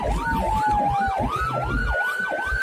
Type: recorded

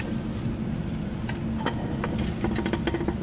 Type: recorded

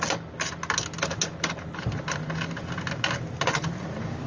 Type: recorded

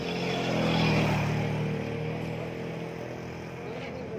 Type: recorded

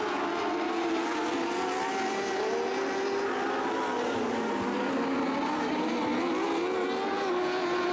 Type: recorded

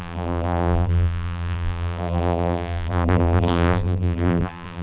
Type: remade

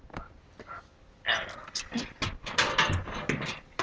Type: recorded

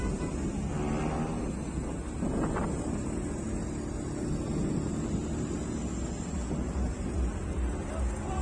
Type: recorded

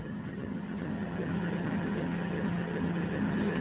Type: remade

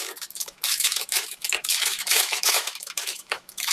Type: remade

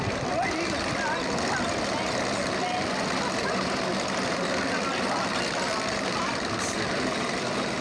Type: recorded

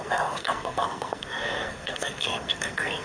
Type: remade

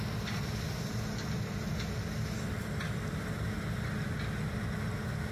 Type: recorded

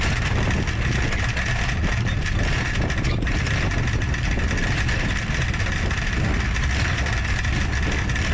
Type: recorded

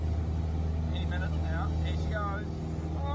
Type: recorded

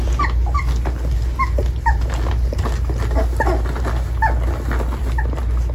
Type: recorded